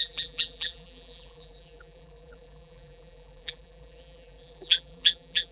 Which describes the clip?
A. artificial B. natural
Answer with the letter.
A